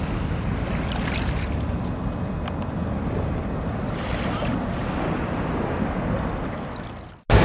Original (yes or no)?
yes